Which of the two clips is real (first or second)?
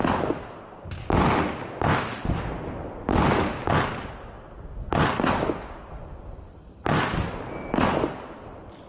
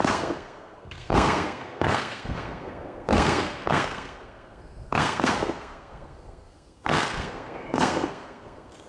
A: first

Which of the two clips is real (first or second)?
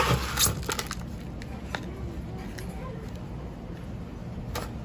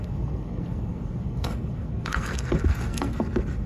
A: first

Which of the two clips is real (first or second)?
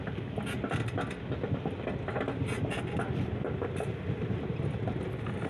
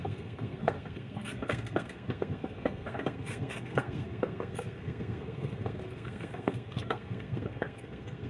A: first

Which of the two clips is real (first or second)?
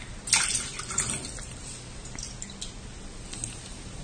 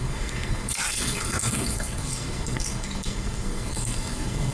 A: first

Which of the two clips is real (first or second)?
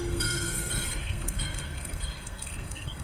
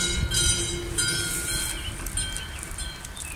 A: second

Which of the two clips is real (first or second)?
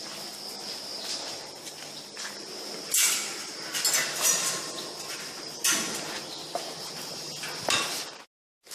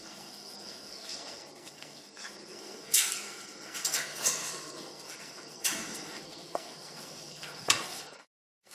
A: first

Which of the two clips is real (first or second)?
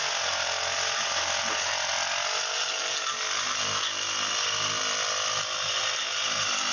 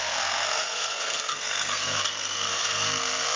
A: first